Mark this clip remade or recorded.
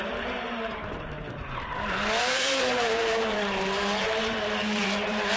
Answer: remade